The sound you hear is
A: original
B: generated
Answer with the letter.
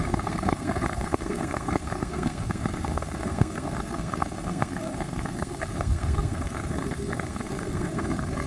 B